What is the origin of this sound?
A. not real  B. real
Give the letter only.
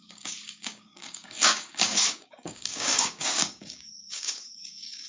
A